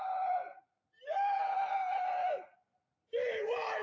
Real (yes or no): yes